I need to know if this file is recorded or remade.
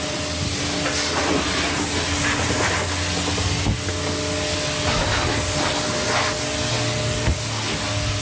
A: recorded